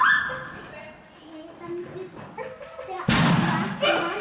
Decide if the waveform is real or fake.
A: real